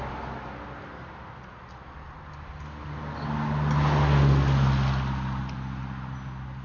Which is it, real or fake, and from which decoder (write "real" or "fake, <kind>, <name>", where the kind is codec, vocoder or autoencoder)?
real